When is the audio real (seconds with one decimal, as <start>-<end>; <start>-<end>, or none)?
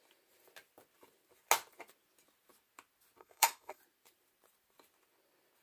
0.0-3.2; 3.8-5.6